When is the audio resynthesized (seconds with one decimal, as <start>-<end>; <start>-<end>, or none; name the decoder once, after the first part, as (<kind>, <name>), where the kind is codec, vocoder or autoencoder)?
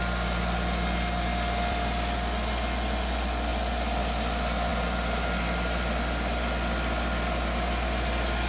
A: none